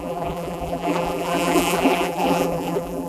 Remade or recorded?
remade